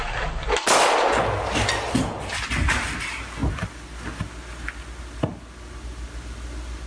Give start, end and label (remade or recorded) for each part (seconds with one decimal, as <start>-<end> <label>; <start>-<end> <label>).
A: 0.0-6.9 recorded